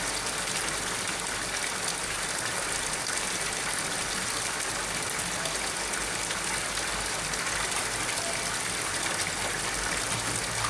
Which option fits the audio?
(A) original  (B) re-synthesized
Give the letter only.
A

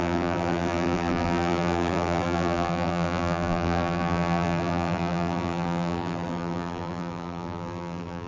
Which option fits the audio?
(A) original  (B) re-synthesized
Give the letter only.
B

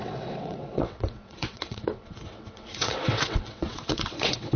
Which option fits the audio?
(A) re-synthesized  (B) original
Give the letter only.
A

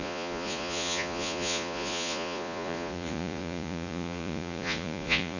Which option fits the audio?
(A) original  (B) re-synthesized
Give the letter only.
B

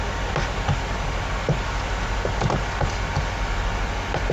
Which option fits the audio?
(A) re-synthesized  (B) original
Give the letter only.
B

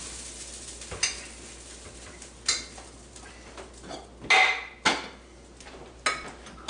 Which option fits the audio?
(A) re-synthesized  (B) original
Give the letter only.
B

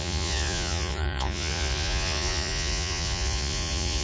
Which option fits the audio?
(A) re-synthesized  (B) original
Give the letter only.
A